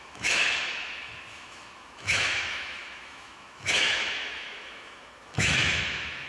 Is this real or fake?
fake